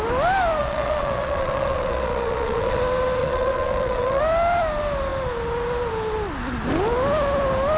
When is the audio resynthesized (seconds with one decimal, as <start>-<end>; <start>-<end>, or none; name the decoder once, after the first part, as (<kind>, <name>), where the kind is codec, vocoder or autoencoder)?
0.6-2.8 (vocoder, Vocos); 3.2-4.2